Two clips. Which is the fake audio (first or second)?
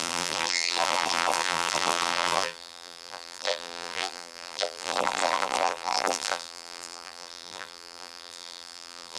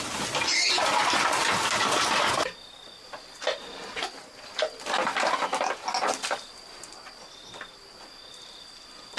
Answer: first